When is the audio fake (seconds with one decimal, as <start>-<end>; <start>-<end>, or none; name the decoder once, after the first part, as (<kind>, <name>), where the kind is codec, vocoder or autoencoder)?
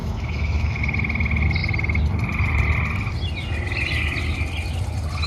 0.0-0.8 (autoencoder, DAC-VAE)